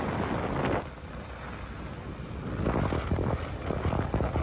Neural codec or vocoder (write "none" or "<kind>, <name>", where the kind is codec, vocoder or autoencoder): none